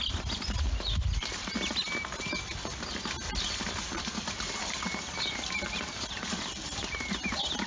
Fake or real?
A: real